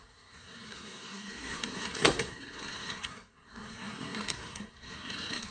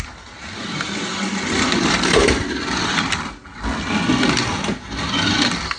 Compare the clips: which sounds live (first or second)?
second